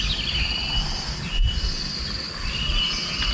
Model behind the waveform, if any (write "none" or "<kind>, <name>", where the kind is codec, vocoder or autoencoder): none